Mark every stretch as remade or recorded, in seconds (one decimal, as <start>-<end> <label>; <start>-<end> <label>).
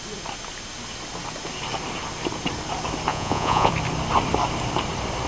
0.0-3.1 recorded; 3.1-3.7 remade; 3.7-5.3 recorded